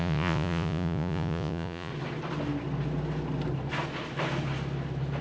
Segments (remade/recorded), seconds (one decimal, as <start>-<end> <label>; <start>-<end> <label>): 0.0-1.9 remade; 1.9-5.2 recorded